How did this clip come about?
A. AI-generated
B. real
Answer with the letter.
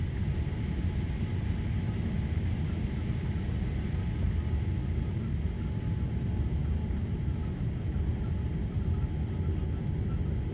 B